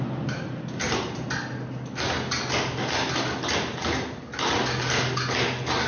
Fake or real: real